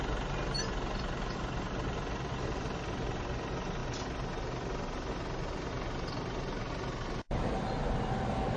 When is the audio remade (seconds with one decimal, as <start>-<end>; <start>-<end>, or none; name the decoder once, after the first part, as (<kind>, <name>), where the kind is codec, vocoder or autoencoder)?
none